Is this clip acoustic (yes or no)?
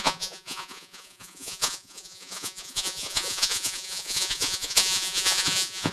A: no